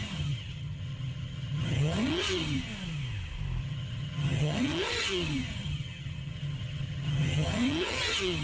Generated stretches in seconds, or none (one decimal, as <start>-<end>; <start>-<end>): 0.0-2.7; 3.6-8.4